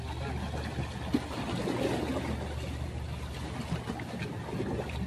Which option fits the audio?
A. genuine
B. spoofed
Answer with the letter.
A